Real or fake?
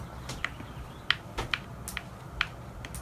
real